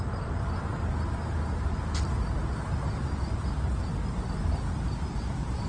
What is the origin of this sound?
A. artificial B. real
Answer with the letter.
B